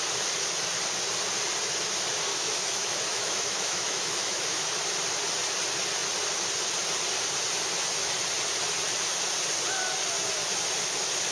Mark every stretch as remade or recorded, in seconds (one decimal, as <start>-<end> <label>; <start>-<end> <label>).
0.0-2.3 recorded; 2.3-4.8 remade; 4.8-11.3 recorded